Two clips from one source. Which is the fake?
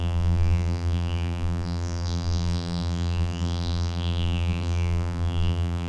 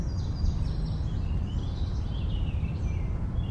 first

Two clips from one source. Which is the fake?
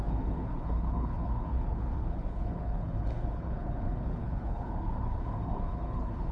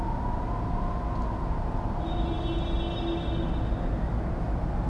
first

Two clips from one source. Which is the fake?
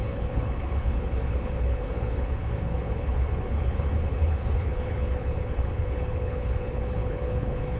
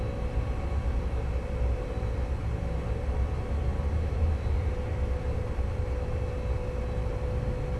first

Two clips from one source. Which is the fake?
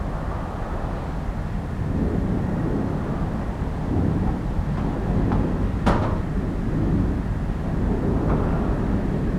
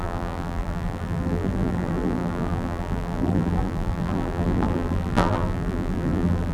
second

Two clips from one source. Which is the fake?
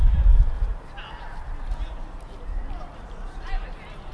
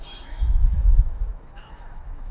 second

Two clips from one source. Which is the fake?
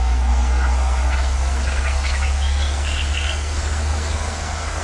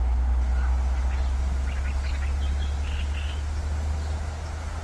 first